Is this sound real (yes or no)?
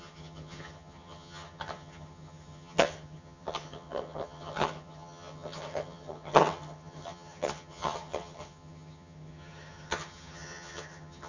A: no